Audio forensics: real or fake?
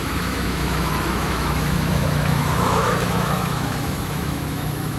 fake